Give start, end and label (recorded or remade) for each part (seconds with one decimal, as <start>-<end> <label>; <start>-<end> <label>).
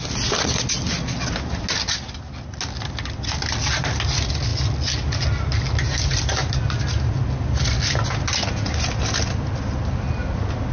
0.0-10.7 recorded